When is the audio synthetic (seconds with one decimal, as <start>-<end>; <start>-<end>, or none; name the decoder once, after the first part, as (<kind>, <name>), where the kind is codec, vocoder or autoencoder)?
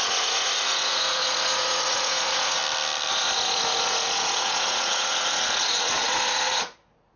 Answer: 0.0-2.6 (vocoder, Vocos); 3.1-7.2